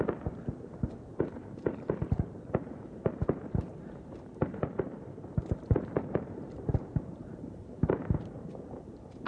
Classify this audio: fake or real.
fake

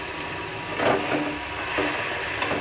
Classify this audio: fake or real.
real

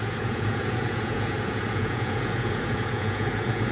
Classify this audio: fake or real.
fake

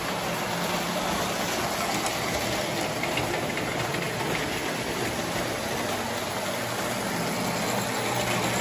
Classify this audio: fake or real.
real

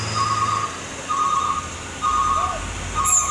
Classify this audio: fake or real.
real